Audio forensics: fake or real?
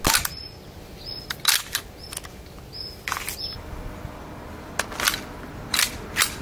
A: real